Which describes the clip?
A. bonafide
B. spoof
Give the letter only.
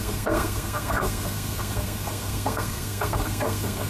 B